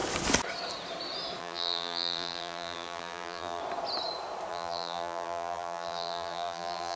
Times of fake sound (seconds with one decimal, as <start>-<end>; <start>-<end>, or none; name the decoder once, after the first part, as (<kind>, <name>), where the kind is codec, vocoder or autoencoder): 1.4-3.6 (vocoder, BigVGAN v2); 4.5-7.0